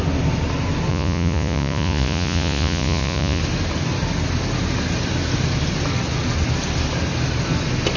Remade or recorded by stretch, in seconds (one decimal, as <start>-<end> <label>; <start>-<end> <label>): 0.0-0.9 recorded; 0.9-3.4 remade; 3.4-8.0 recorded